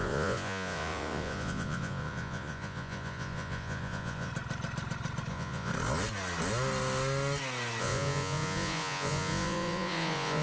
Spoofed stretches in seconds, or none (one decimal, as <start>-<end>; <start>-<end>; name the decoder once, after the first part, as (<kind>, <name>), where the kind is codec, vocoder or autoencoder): 0.0-4.3 (vocoder, Vocos); 5.3-5.7; 7.8-10.4